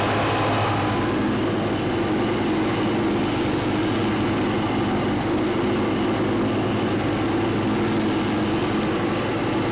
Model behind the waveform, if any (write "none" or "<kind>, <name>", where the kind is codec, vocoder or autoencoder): none